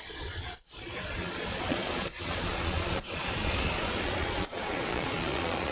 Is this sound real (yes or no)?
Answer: no